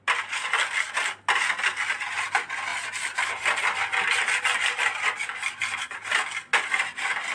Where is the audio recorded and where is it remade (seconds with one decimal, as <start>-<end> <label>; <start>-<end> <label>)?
0.0-7.3 recorded